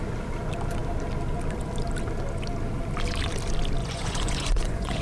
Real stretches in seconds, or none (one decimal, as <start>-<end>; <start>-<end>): 0.0-3.8